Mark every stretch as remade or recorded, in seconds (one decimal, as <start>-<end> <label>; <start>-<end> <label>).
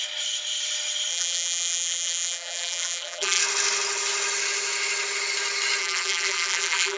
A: 0.0-1.1 recorded; 1.1-3.4 remade; 3.4-5.8 recorded; 5.8-7.0 remade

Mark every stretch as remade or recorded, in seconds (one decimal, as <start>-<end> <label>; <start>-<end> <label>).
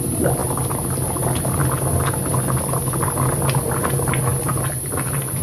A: 0.0-5.4 recorded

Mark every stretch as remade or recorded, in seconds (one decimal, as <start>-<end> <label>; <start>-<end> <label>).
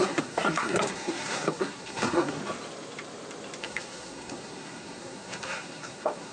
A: 0.0-2.4 remade; 2.4-3.6 recorded; 3.6-6.3 remade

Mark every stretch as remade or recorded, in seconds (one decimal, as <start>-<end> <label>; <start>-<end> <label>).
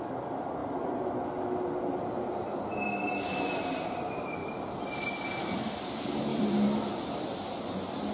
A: 0.0-6.3 recorded; 6.3-6.9 remade; 6.9-8.1 recorded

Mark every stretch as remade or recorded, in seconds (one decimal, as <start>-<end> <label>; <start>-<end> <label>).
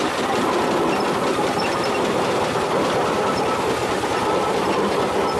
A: 0.0-1.3 recorded; 1.3-2.3 remade; 2.3-5.4 recorded